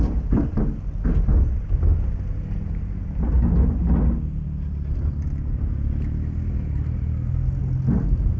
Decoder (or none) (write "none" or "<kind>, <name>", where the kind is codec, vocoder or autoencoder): none